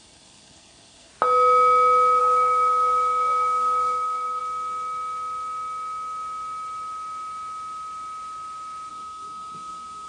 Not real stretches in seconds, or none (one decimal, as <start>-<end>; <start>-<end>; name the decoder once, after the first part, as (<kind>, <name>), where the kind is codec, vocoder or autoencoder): 0.0-1.1 (codec, SNAC); 2.2-4.4; 8.9-10.1